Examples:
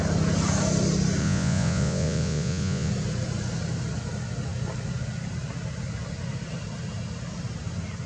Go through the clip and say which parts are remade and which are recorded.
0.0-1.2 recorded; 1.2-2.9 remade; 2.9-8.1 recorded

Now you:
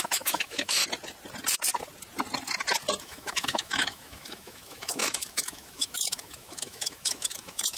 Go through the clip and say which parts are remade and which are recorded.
0.0-0.8 remade; 0.8-3.0 recorded; 3.0-7.8 remade

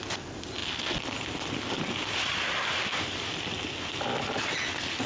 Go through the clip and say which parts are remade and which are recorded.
0.0-5.1 recorded

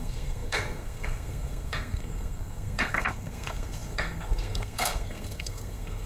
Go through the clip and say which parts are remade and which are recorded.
0.0-6.1 remade

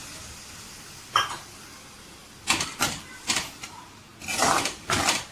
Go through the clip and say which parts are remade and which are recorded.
0.0-5.3 recorded

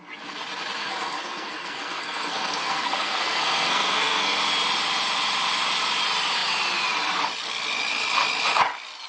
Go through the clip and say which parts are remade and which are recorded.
0.0-0.8 recorded; 0.8-4.4 remade; 4.4-9.1 recorded

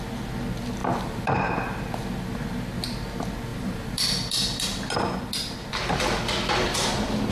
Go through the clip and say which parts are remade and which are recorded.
0.0-0.8 recorded; 0.8-1.5 remade; 1.5-3.5 recorded; 3.5-7.3 remade